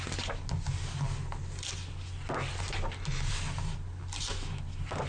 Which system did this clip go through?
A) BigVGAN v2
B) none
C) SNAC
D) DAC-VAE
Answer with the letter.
B